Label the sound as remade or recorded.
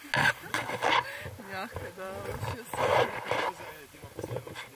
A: recorded